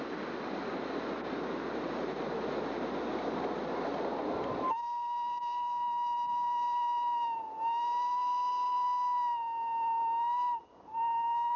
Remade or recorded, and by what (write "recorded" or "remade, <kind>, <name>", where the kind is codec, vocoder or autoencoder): recorded